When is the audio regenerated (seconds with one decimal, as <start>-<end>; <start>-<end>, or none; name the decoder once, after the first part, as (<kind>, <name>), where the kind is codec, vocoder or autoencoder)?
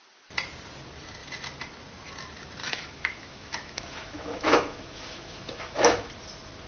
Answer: 2.6-6.1 (autoencoder, DAC-VAE)